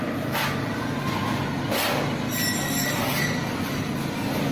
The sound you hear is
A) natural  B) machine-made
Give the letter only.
A